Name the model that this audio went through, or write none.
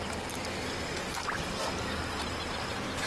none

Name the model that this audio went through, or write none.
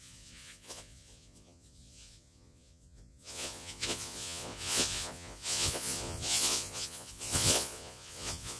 vocoder, Vocos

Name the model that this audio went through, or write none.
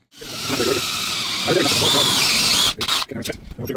none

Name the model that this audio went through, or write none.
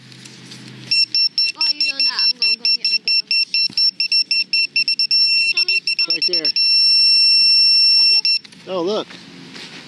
none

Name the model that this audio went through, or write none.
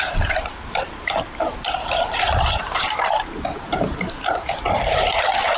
vocoder, BigVGAN v2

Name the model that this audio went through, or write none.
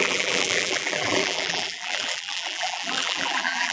vocoder, BigVGAN v2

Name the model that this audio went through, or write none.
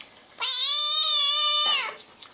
none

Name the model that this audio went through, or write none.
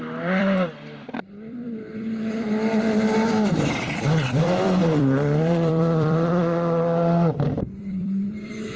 vocoder, BigVGAN v2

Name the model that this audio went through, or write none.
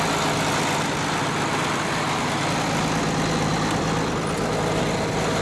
none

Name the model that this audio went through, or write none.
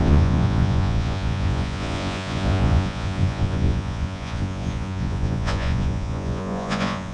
vocoder, Vocos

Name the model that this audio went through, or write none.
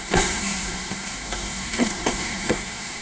codec, SNAC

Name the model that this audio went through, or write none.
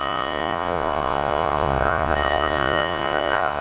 vocoder, Vocos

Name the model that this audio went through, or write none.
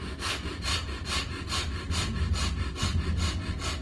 none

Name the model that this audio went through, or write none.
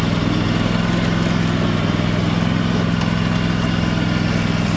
none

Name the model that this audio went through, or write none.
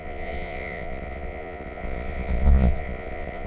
vocoder, Vocos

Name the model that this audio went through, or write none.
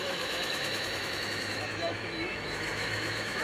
autoencoder, DAC-VAE